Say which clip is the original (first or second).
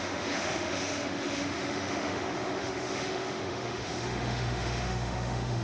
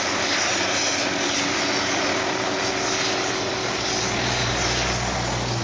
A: second